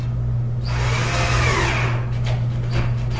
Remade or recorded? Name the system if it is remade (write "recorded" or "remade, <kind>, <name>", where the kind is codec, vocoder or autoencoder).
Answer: recorded